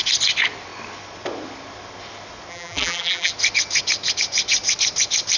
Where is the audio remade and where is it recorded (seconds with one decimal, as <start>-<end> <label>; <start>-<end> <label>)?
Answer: 0.0-2.5 recorded; 2.5-3.3 remade; 3.3-5.4 recorded